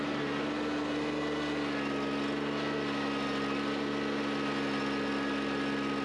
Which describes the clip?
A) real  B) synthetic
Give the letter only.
A